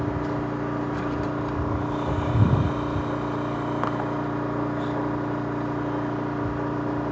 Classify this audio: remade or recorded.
remade